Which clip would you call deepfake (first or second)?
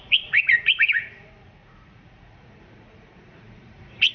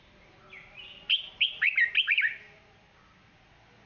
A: first